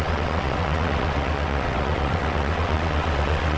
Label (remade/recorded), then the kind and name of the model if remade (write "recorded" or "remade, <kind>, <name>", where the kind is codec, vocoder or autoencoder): remade, vocoder, WaveNeXt